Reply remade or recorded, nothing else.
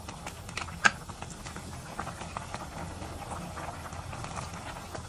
recorded